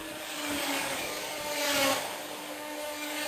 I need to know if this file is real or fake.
fake